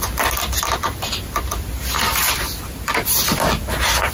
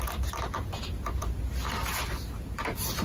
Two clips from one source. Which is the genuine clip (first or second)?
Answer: second